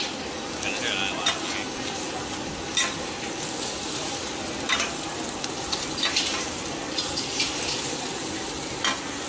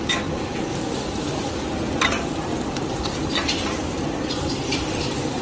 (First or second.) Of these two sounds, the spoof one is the second